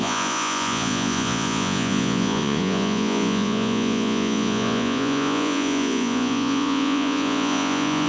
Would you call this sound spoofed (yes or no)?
yes